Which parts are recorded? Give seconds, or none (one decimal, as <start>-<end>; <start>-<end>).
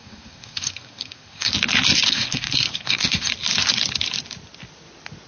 1.5-2.1; 3.3-5.3